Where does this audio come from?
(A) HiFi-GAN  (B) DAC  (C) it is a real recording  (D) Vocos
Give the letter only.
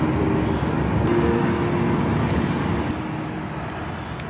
C